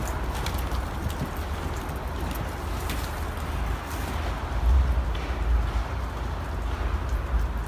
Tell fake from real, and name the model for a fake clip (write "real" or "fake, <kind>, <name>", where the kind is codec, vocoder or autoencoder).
real